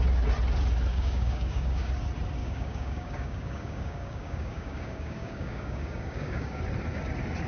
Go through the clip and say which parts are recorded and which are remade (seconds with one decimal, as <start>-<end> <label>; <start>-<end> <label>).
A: 0.0-0.9 recorded; 0.9-1.9 remade; 1.9-2.4 recorded; 2.4-6.6 remade; 6.6-7.5 recorded